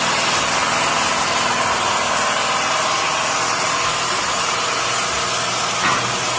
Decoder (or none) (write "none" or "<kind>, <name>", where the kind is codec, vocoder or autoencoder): none